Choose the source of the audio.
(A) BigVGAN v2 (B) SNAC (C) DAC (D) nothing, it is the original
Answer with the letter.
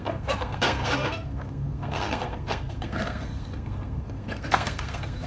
B